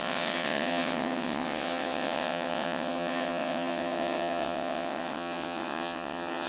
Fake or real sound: fake